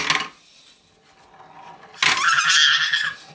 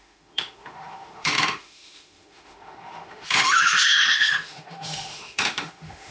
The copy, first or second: second